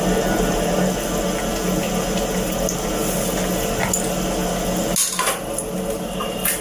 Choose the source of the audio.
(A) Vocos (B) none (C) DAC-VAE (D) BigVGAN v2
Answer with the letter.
B